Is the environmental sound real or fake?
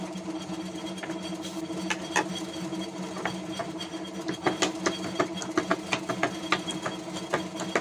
real